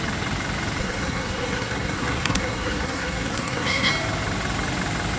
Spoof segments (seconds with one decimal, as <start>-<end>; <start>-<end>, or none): 0.8-3.9